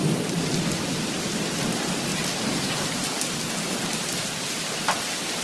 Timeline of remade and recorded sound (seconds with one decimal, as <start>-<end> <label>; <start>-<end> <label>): 0.0-0.9 remade; 0.9-5.4 recorded